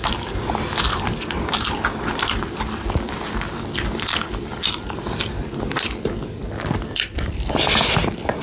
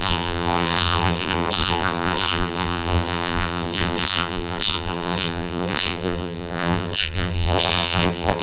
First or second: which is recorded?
first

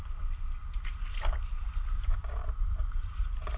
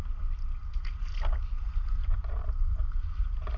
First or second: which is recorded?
second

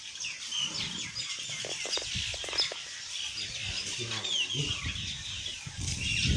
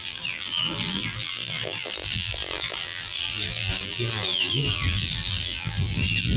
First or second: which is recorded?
first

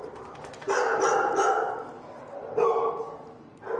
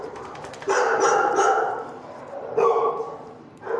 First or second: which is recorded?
first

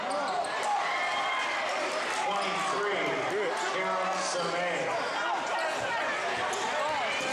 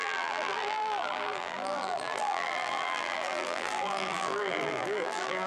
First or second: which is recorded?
first